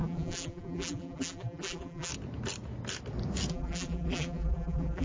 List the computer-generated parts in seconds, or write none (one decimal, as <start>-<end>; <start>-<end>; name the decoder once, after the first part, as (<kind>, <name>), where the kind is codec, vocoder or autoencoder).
0.0-2.1 (vocoder, BigVGAN v2); 3.5-5.0